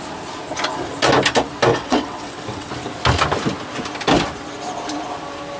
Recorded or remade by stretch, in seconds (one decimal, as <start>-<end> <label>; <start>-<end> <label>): 0.0-1.7 recorded; 1.7-2.7 remade; 2.7-5.6 recorded